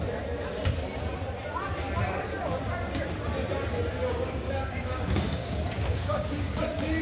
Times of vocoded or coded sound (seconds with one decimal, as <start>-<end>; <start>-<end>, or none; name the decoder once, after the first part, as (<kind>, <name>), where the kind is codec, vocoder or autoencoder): 4.0-6.6 (codec, DAC)